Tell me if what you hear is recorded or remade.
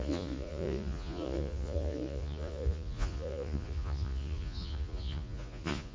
remade